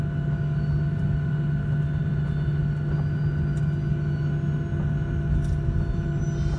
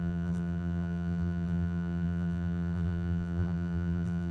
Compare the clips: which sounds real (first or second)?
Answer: first